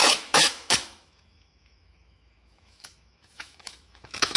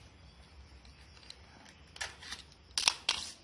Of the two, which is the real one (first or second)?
second